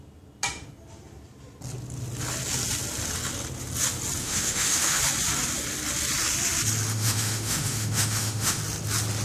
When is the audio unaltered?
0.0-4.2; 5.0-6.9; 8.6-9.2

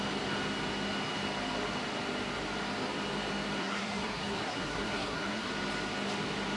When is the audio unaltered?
0.0-3.6; 5.5-6.6

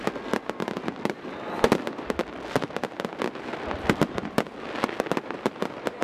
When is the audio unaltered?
0.0-6.0

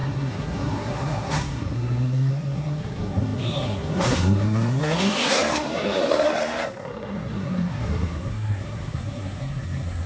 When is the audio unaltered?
none